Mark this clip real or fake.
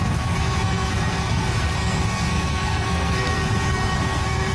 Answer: fake